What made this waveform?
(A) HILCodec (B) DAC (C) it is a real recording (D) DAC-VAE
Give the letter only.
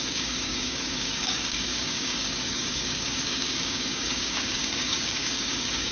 B